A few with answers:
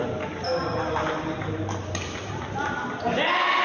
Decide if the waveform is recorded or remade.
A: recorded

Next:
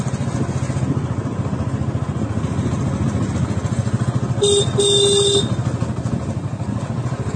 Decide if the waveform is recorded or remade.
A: recorded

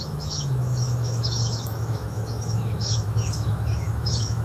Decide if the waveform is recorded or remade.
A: remade